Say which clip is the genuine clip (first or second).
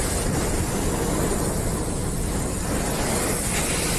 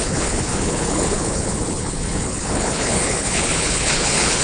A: first